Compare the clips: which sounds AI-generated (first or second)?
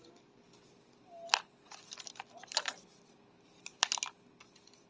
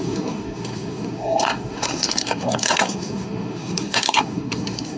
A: second